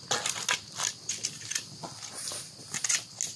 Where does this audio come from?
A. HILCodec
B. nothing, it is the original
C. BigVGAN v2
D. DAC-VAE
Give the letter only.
B